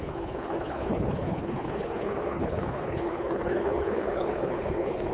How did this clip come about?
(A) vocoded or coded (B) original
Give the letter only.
A